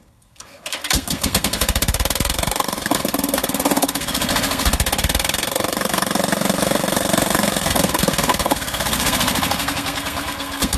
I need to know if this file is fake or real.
fake